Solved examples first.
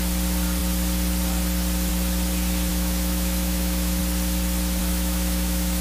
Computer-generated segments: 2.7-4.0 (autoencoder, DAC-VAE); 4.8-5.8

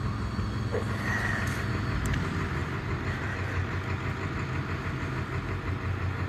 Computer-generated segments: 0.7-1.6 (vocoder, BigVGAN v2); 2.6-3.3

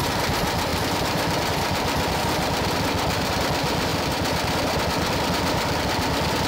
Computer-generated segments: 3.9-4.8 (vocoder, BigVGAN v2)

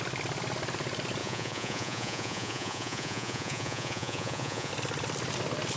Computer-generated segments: 1.2-4.7 (vocoder, Vocos)